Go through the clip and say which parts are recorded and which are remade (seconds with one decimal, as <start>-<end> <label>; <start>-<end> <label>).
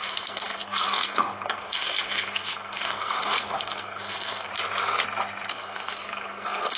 0.0-4.5 remade; 4.5-5.5 recorded; 5.5-6.8 remade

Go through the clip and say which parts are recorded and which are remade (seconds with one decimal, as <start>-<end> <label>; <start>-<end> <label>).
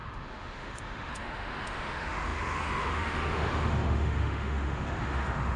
0.0-5.6 remade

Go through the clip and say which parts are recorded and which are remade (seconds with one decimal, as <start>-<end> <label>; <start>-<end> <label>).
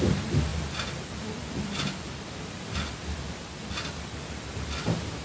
0.0-5.2 recorded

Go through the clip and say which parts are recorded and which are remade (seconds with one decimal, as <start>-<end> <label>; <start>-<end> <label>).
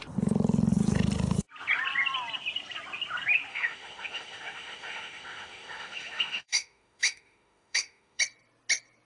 0.0-3.5 recorded; 3.5-8.2 remade; 8.2-9.0 recorded